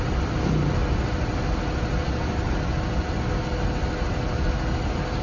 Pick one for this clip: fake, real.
real